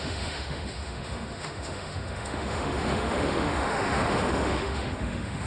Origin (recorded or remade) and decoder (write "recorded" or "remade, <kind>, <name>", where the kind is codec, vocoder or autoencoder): remade, autoencoder, DAC-VAE